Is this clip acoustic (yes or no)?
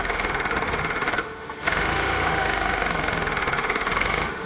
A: no